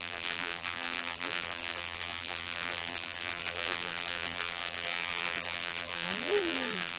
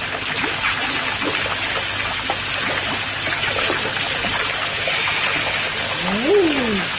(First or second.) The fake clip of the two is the first